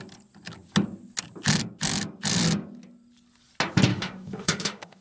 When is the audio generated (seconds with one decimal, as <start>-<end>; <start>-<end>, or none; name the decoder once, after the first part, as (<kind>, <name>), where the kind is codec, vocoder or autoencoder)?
3.9-5.0 (autoencoder, DAC-VAE)